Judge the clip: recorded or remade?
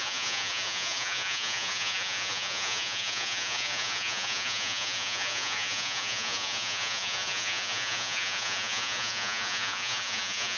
remade